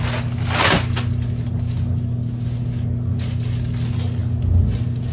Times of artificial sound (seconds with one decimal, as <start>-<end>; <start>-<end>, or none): none